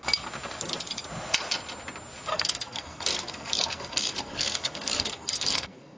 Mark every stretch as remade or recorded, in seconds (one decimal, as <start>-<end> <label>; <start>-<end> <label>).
0.0-2.3 recorded; 2.3-6.0 remade